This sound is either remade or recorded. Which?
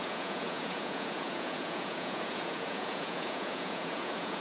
remade